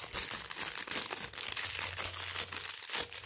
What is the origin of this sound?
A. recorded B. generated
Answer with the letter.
A